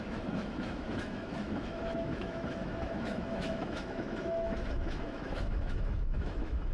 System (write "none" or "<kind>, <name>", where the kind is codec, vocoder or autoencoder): autoencoder, DAC-VAE